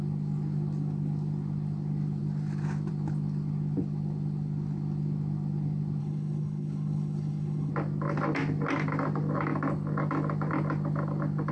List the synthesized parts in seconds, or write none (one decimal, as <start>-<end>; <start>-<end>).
6.0-7.7